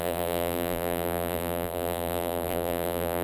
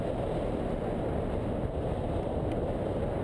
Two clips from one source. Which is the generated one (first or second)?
first